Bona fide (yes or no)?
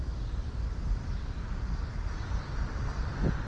yes